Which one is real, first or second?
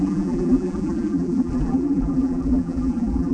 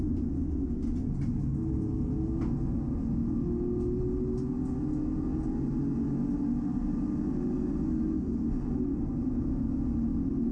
second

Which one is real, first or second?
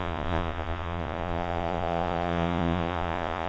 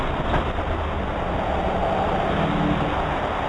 second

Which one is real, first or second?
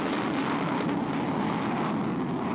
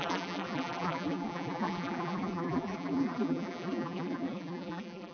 first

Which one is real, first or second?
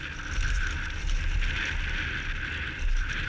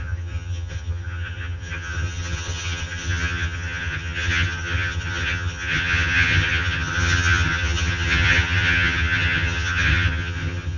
first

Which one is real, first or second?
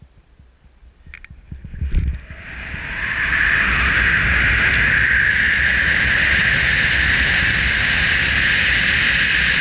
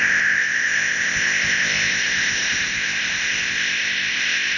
first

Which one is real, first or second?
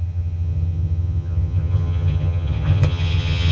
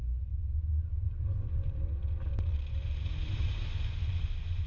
second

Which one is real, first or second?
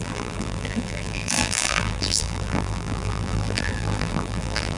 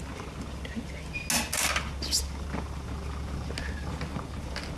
second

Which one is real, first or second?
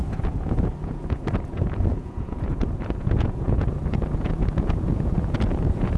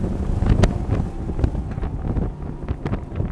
second